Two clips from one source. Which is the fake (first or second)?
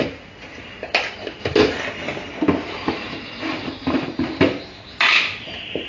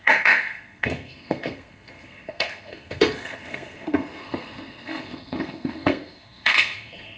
second